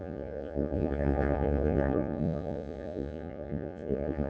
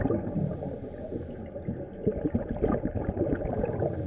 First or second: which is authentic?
second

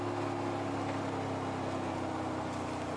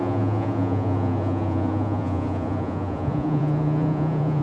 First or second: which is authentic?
first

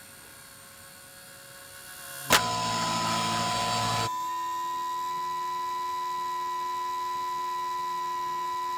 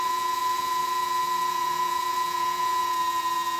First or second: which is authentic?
first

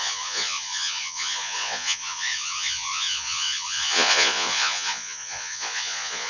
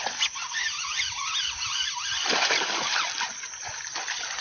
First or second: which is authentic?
second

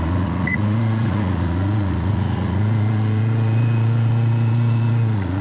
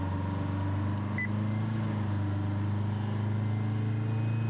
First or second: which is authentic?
second